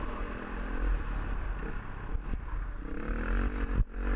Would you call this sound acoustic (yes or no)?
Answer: yes